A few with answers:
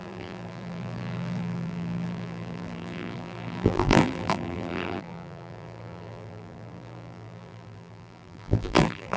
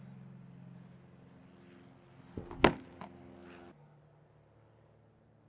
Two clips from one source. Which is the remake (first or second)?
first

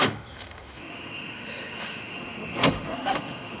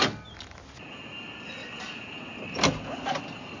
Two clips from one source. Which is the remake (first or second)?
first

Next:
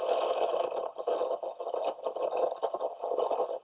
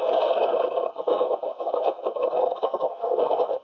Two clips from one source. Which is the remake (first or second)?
second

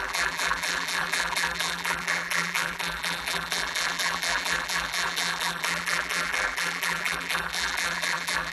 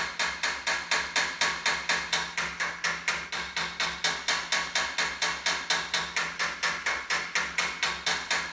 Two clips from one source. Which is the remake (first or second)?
first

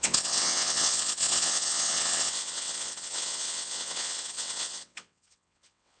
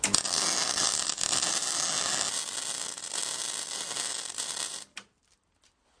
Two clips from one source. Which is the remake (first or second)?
first